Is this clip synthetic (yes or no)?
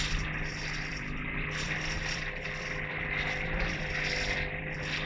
yes